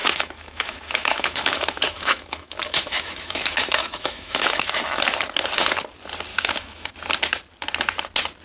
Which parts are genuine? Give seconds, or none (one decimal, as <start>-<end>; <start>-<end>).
5.0-6.3; 6.9-8.4